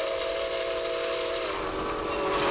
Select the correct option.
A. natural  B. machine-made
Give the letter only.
A